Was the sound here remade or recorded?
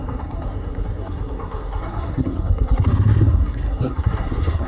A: remade